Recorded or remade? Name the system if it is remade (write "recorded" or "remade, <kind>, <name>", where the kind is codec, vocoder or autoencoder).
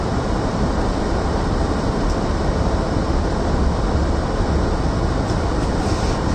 recorded